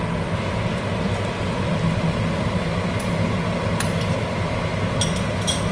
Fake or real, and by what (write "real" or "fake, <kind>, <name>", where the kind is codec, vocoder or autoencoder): real